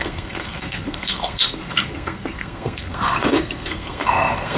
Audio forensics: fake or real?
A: fake